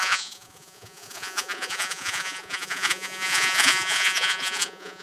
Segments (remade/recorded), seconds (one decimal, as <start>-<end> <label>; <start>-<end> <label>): 0.0-5.0 remade